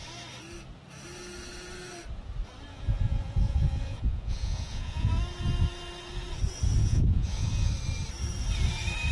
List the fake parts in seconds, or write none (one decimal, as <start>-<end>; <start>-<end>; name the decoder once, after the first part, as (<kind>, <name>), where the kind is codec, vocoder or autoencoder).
2.7-5.1 (vocoder, Vocos); 6.8-7.7